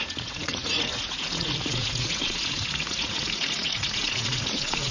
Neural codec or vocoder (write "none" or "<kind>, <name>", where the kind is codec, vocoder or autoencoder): vocoder, Vocos